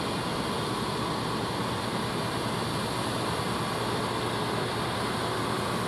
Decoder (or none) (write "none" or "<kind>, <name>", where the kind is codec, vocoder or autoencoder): none